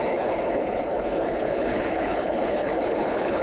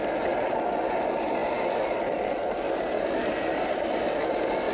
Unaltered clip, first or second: second